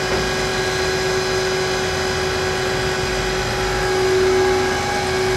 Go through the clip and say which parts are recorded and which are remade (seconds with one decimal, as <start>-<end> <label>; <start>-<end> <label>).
0.0-5.4 recorded